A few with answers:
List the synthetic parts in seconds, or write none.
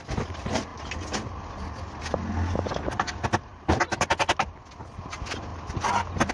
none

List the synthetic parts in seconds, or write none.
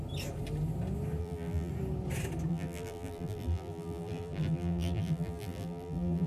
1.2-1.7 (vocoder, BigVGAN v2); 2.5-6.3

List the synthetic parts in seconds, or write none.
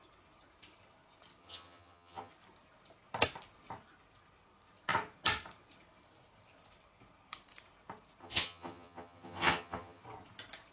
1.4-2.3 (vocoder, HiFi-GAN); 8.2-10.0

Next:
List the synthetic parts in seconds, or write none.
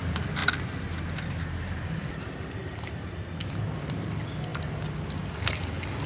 2.6-3.3 (vocoder, BigVGAN v2)